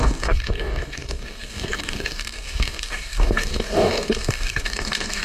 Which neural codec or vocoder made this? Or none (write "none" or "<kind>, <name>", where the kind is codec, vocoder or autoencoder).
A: codec, DAC